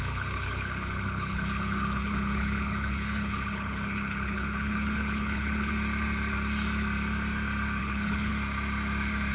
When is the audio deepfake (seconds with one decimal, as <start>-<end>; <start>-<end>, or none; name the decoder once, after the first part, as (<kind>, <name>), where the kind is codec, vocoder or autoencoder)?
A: 0.0-5.7 (codec, HILCodec); 7.8-8.3